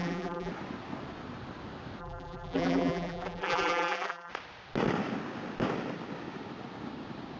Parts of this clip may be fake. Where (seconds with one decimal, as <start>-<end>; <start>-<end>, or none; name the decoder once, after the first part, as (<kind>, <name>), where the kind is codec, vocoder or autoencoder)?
0.0-0.5 (vocoder, BigVGAN v2); 2.0-4.3